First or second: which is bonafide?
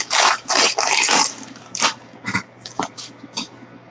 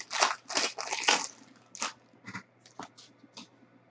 second